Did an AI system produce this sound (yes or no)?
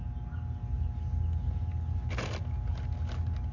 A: no